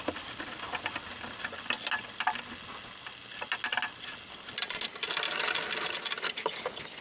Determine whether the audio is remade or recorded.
recorded